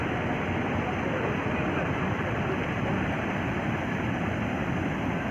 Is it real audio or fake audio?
real